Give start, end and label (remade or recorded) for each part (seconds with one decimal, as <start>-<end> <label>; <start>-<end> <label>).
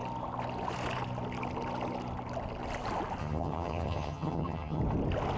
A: 0.0-3.2 recorded; 3.2-4.8 remade; 4.8-5.4 recorded